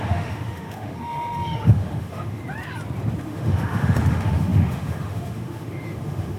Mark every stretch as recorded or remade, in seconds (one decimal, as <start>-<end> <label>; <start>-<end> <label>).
0.0-2.4 remade; 2.4-3.2 recorded; 3.2-6.4 remade